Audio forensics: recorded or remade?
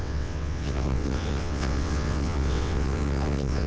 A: remade